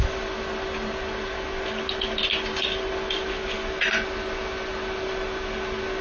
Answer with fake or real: real